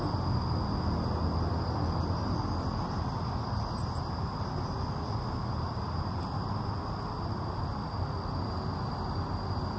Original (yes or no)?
yes